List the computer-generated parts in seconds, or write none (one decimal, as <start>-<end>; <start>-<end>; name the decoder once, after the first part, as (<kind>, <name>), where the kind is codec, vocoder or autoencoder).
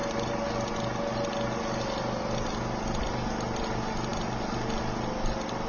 none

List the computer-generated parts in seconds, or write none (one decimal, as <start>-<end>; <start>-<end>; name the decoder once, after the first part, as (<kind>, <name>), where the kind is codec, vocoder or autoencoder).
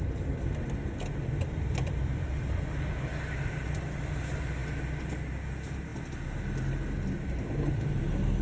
none